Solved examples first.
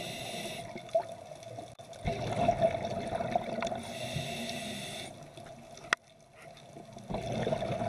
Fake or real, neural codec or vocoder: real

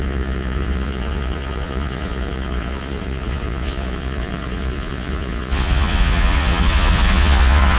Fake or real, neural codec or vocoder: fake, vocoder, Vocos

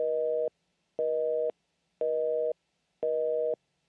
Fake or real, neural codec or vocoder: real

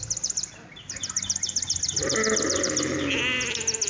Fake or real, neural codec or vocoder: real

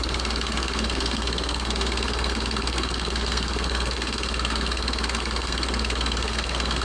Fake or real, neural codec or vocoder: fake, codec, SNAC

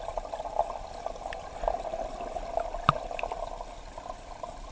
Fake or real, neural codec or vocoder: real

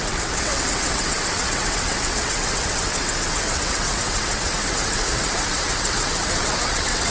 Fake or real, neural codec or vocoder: fake, vocoder, WaveNeXt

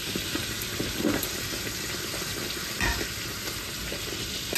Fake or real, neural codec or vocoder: real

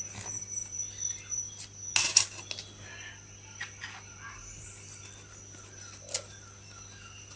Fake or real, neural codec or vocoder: real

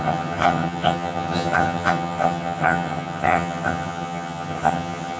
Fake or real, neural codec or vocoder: fake, vocoder, HiFi-GAN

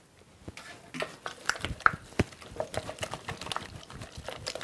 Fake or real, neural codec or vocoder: real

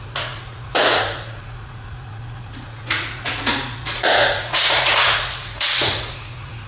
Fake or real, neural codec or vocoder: fake, vocoder, Vocos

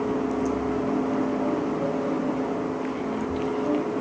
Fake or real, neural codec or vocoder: real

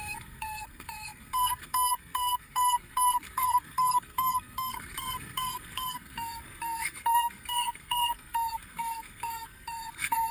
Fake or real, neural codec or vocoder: fake, codec, SNAC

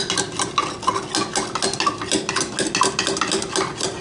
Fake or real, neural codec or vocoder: real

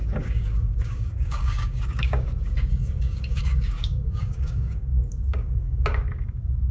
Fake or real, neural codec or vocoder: fake, codec, DAC